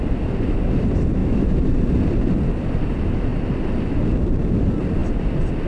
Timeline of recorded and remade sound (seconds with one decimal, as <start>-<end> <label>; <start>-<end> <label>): 0.0-1.2 recorded; 1.2-1.8 remade; 1.8-5.7 recorded